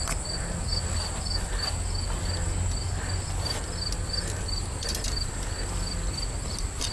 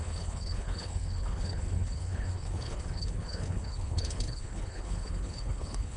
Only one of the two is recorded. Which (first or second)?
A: first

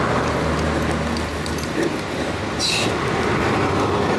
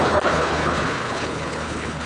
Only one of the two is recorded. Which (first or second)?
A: first